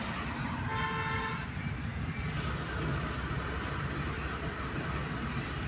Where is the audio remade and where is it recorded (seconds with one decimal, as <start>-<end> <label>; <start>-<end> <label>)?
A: 0.0-5.7 recorded